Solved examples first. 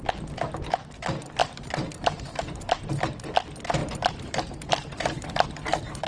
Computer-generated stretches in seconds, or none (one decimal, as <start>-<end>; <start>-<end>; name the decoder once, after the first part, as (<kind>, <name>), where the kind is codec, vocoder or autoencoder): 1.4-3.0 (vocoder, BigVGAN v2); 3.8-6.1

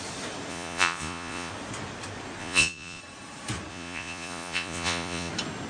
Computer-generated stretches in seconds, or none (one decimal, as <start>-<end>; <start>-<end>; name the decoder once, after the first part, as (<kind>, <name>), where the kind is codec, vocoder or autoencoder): 0.5-1.5 (vocoder, Vocos); 2.4-3.0; 3.7-5.3

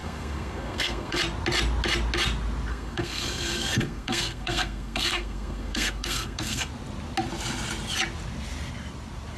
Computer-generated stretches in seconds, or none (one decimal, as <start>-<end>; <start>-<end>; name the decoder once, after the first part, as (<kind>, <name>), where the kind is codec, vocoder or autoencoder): 0.0-1.2 (codec, SNAC); 2.7-6.7

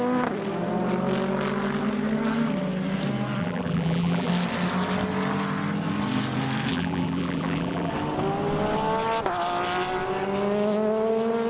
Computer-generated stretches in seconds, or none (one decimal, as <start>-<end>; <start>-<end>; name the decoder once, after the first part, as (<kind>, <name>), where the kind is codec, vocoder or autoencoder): 3.4-4.3 (vocoder, BigVGAN v2); 6.7-7.9

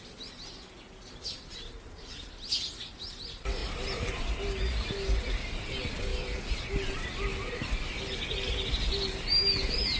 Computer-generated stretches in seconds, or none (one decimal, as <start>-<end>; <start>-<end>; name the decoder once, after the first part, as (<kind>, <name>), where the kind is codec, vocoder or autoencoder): none

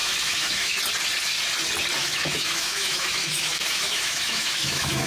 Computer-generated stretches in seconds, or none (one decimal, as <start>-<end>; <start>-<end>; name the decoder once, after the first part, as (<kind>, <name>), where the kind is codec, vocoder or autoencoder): 0.0-0.8 (autoencoder, DAC-VAE); 2.0-5.1

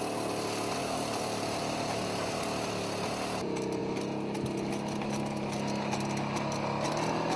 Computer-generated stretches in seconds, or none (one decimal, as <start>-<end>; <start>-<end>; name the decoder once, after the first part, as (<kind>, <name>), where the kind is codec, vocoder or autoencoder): 0.8-2.4 (vocoder, BigVGAN v2)